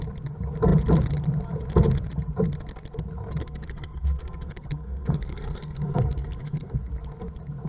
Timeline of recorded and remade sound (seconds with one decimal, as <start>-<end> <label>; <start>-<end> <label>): 0.0-3.4 recorded; 3.4-6.8 remade; 6.8-7.7 recorded